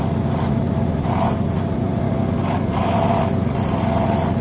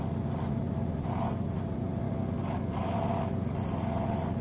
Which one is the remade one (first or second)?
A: first